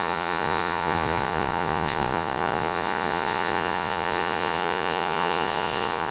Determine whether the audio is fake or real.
fake